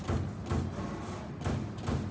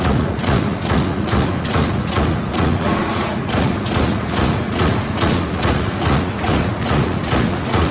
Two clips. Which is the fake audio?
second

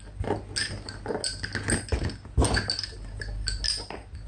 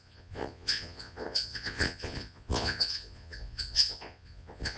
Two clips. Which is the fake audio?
second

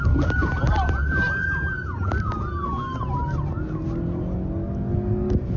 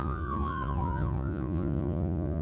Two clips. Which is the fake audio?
second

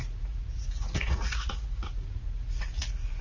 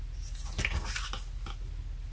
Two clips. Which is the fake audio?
first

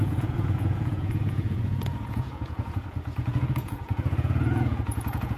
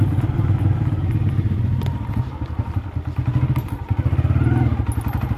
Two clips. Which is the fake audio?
first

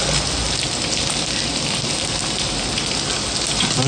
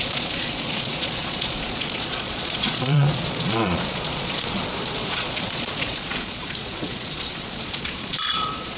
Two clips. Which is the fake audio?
second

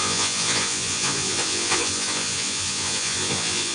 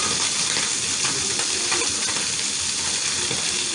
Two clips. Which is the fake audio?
first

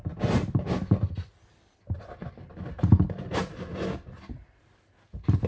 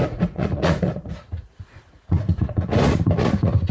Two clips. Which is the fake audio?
second